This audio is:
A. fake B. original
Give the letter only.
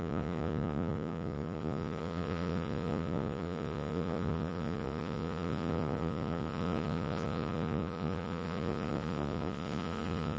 A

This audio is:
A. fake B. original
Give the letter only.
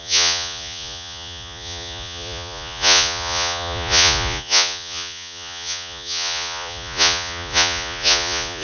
A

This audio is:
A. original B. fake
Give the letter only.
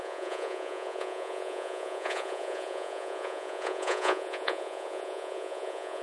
B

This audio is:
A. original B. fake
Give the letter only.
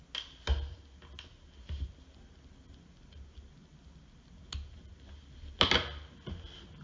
A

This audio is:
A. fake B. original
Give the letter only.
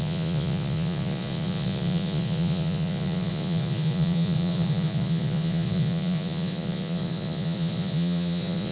A